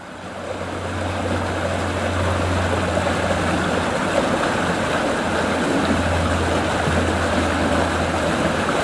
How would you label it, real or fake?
real